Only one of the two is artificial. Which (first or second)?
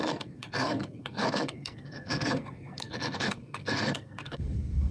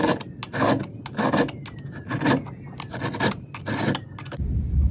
first